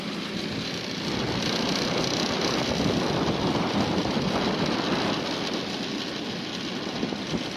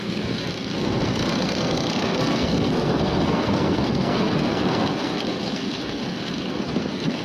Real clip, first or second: first